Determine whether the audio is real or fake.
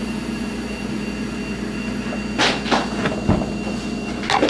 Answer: real